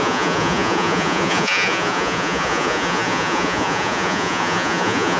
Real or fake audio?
fake